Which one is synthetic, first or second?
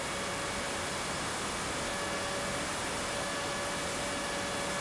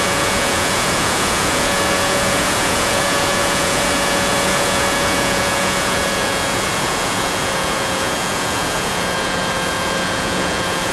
second